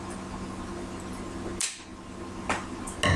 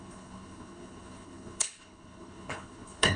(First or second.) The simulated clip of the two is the second